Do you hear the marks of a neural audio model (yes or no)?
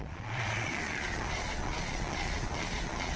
yes